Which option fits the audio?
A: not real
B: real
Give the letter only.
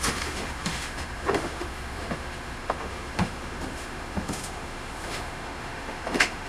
A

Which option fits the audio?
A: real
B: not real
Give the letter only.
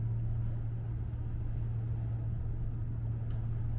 A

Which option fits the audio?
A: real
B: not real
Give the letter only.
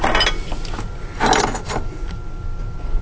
A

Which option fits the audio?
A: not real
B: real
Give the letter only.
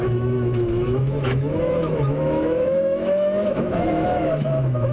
A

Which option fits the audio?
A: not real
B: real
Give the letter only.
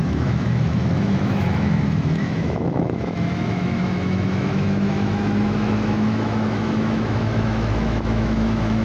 A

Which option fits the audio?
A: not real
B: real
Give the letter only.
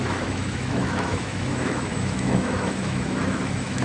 A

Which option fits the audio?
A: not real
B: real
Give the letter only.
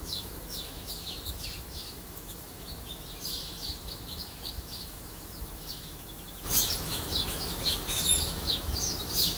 A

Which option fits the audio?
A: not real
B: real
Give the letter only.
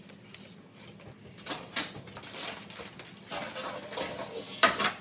B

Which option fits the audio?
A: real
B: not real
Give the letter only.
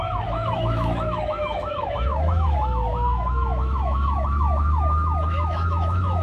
B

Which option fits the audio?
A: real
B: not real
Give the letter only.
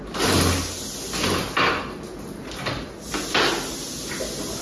A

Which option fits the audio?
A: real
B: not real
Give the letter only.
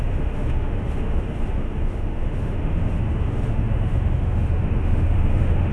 B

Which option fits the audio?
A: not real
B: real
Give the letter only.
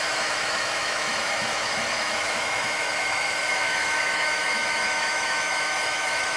A